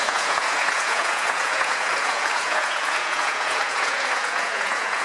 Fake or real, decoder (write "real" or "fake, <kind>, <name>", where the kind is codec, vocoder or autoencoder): fake, vocoder, Vocos